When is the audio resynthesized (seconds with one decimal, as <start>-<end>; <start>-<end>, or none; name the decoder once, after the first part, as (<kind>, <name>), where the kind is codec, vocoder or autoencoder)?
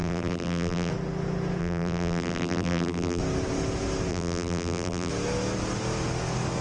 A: 0.0-0.9 (vocoder, BigVGAN v2); 1.6-3.2; 4.1-5.1